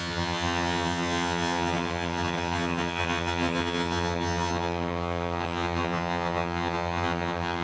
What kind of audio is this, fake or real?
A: fake